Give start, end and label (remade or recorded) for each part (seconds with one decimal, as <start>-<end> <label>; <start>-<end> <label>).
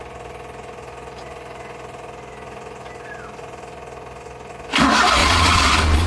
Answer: 0.0-5.2 recorded; 5.2-6.1 remade